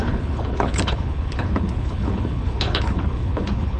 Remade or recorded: remade